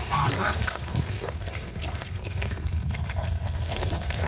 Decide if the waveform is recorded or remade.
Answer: remade